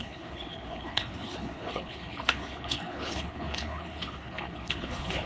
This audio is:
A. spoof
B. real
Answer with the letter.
A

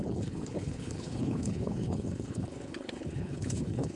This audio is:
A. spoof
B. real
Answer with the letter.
A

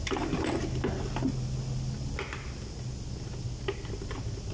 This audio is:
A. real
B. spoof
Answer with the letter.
A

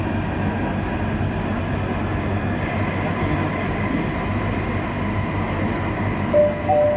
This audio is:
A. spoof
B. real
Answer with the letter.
B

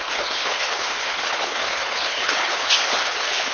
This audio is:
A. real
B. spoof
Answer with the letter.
B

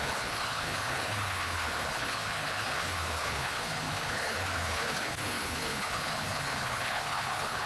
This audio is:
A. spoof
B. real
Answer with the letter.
A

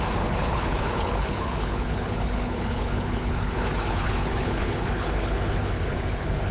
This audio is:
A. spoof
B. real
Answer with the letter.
A